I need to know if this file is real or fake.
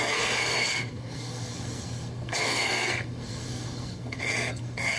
fake